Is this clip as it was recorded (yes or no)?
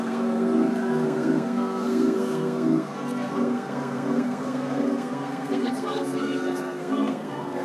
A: no